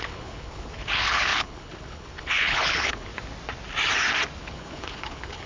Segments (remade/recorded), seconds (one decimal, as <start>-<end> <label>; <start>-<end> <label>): 0.0-3.1 remade; 3.1-4.4 recorded; 4.4-5.5 remade